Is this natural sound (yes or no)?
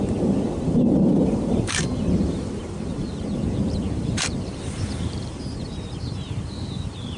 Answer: no